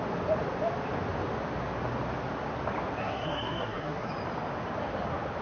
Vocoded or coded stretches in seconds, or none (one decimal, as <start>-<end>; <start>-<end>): 3.0-4.1